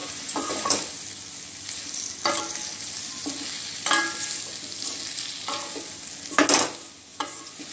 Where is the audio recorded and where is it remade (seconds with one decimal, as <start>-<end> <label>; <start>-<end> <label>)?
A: 0.0-0.7 remade; 0.7-7.1 recorded; 7.1-7.7 remade